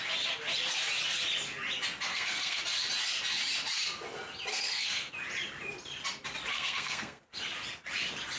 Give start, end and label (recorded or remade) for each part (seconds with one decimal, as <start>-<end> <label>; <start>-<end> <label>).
0.0-2.1 recorded; 2.1-2.6 remade; 2.6-4.5 recorded; 4.5-5.1 remade; 5.1-6.5 recorded; 6.5-7.2 remade; 7.2-8.4 recorded